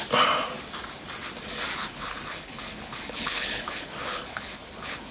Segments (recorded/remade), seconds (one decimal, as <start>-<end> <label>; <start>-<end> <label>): 0.0-1.7 recorded; 1.7-5.1 remade